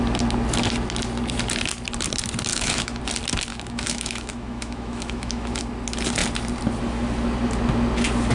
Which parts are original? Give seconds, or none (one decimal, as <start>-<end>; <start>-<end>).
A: 0.0-2.5; 3.0-3.5; 5.6-8.3